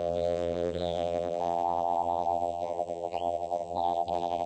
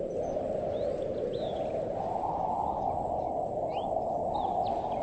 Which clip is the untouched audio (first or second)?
second